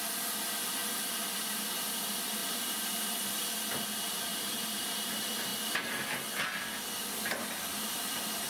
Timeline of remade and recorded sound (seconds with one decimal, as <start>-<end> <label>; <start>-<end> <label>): 0.0-2.4 recorded; 2.4-3.0 remade; 3.0-4.3 recorded; 4.3-5.1 remade; 5.1-8.5 recorded